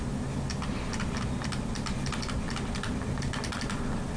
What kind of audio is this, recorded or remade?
recorded